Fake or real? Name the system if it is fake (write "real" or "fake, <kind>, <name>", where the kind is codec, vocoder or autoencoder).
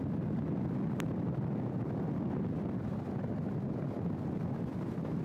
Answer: real